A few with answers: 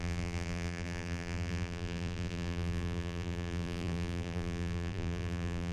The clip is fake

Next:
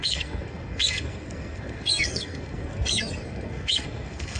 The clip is fake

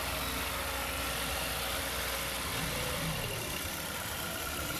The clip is real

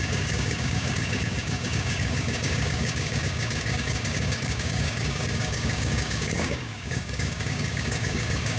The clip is fake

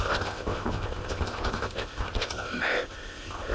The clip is fake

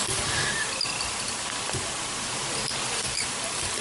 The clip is real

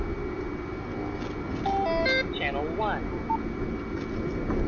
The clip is real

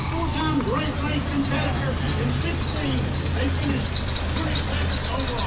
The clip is real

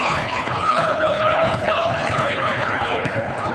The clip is fake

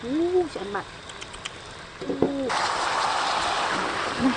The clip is real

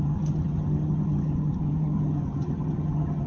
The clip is fake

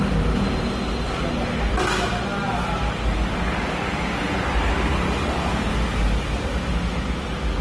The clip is real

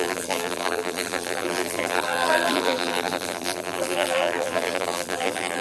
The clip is fake